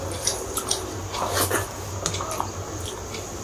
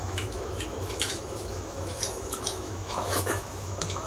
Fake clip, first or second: second